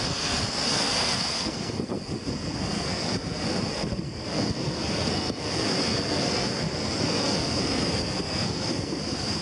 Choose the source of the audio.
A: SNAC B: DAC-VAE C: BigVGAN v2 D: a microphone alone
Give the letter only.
A